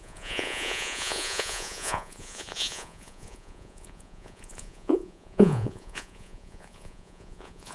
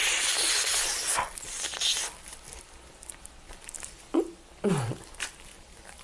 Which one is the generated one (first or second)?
first